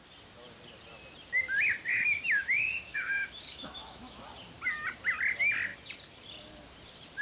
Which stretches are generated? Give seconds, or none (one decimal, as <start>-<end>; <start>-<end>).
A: 1.9-4.2